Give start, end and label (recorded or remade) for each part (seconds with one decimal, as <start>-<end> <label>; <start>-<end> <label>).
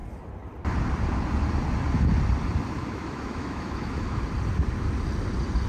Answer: 0.0-2.8 recorded; 2.8-4.2 remade; 4.2-5.7 recorded